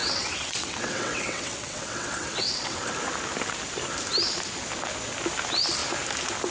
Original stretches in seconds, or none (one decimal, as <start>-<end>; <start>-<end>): 2.9-6.5